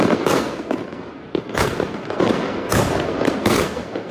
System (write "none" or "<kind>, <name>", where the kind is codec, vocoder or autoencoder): codec, SNAC